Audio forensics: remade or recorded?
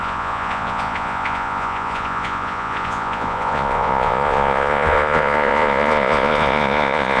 remade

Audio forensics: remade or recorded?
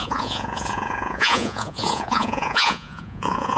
remade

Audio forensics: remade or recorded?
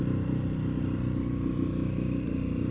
recorded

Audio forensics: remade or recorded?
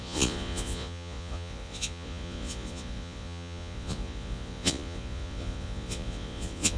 remade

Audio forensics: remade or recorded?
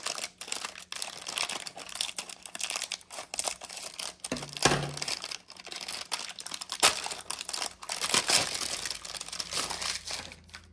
recorded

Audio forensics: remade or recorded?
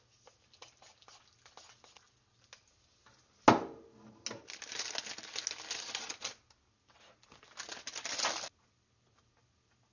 recorded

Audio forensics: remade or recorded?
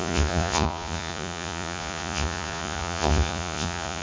remade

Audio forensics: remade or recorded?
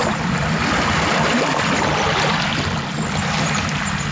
recorded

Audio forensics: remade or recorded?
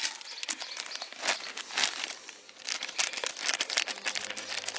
recorded